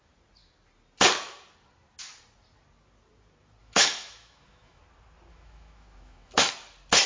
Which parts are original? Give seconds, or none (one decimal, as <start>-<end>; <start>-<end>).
0.0-3.6; 4.8-5.3; 6.5-7.1